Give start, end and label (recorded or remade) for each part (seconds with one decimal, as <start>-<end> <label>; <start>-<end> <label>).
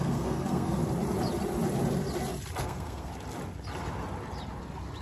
0.0-0.8 remade; 0.8-2.6 recorded; 2.6-3.1 remade; 3.1-5.0 recorded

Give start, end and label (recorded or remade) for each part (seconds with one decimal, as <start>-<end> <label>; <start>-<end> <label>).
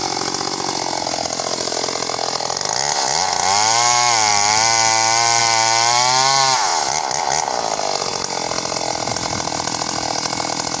0.0-10.8 recorded